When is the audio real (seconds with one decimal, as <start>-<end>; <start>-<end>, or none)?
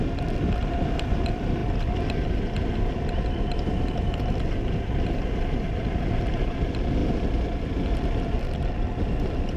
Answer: 0.0-9.6